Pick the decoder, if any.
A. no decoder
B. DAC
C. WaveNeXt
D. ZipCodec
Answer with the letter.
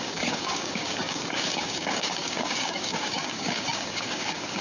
B